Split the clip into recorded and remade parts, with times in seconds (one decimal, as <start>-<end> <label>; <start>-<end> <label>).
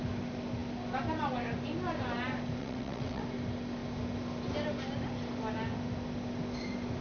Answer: 0.0-2.6 recorded; 2.6-3.2 remade; 3.2-7.0 recorded